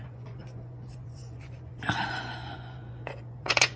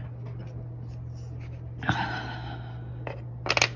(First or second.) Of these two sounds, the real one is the second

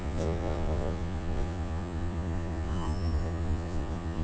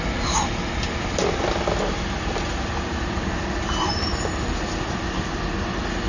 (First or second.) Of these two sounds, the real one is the second